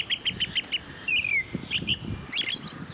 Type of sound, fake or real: real